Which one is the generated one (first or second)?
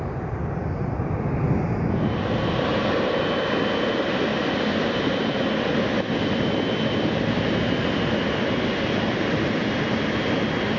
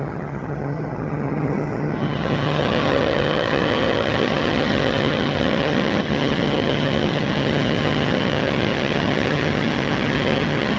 second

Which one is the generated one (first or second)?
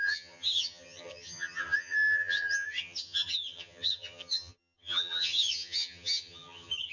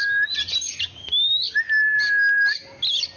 first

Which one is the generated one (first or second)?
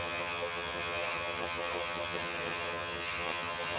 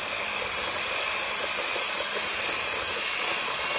first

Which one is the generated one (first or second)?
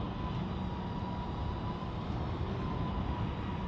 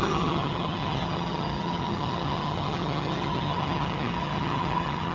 second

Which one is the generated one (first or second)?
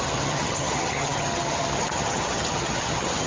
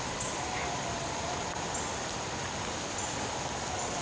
first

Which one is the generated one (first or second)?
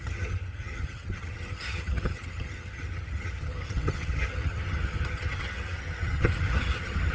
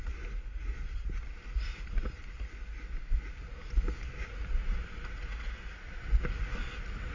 first